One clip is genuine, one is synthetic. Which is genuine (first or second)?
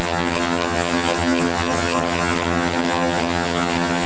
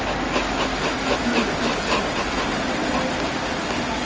second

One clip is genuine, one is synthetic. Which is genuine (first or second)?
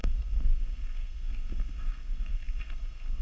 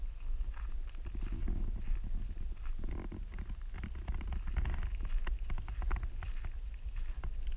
second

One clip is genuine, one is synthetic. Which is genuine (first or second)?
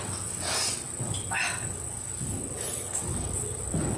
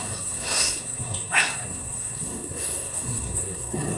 first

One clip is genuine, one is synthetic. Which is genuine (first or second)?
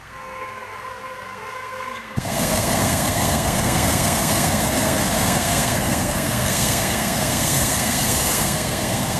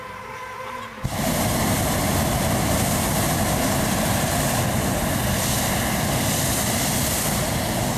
second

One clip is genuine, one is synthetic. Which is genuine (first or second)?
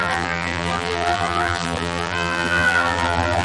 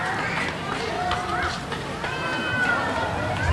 second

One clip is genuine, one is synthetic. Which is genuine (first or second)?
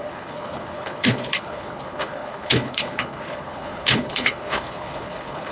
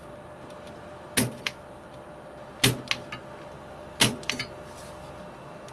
second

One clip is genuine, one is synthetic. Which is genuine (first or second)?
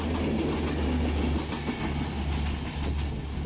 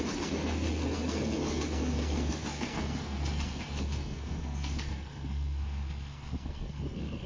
first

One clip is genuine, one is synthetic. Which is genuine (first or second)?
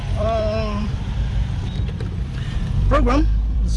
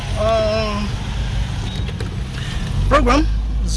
second